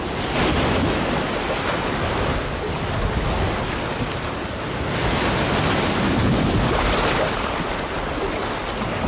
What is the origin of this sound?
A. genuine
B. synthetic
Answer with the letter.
A